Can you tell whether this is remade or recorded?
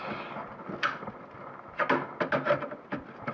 recorded